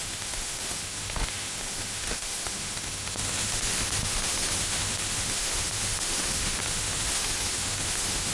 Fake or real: fake